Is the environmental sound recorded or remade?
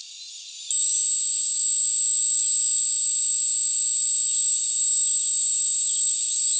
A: recorded